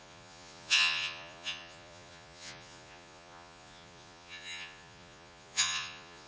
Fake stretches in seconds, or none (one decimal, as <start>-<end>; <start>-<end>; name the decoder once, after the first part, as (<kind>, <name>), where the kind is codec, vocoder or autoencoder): 0.0-6.3 (vocoder, Vocos)